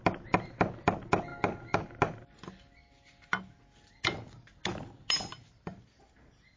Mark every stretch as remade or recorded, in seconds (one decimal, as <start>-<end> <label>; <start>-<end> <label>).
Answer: 0.0-6.6 recorded